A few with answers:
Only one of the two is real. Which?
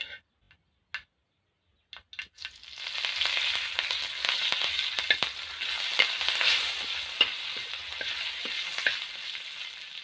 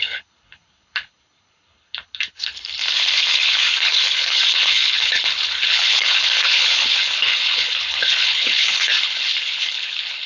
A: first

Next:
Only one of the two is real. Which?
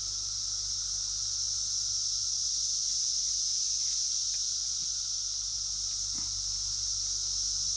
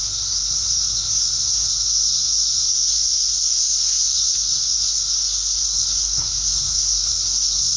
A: first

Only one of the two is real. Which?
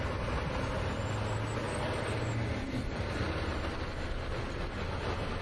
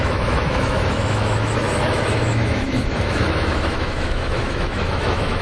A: first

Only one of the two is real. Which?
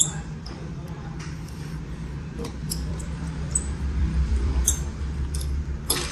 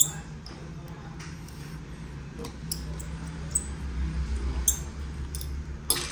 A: second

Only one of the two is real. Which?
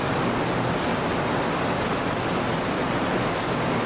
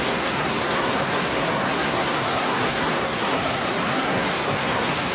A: first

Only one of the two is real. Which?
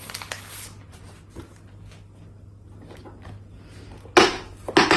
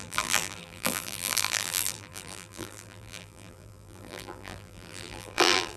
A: first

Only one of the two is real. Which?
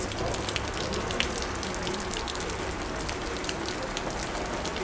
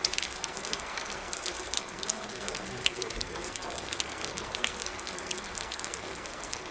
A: first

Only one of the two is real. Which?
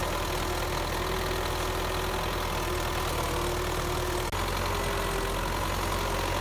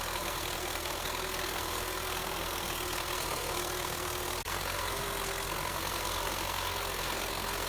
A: first